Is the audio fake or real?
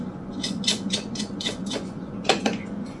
fake